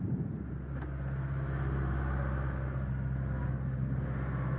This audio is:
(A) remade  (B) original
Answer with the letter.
B